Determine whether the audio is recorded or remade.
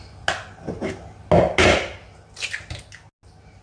recorded